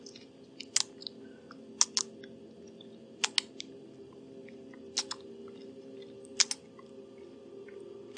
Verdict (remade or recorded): recorded